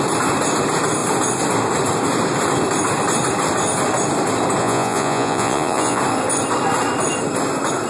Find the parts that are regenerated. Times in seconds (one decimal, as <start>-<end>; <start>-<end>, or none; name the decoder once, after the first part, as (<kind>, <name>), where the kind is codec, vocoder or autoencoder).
4.6-6.0 (vocoder, Vocos)